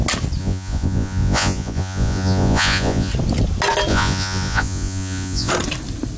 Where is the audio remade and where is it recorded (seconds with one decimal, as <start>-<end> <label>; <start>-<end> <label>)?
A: 0.0-0.4 recorded; 0.4-3.1 remade; 3.1-3.9 recorded; 3.9-5.5 remade; 5.5-6.2 recorded